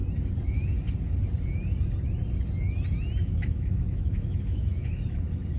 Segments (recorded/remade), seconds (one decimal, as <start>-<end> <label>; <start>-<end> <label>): 0.0-3.2 recorded; 3.2-5.6 remade